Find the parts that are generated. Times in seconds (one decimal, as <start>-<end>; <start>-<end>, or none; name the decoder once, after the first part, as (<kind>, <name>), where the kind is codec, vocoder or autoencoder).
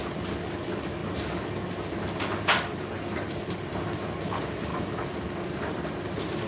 none